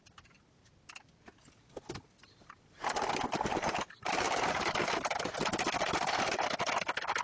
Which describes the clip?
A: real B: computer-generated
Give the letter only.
A